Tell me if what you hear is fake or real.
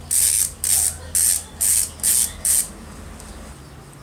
real